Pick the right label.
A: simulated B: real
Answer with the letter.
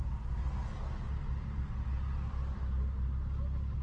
B